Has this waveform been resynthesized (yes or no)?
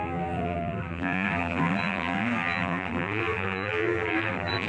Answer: yes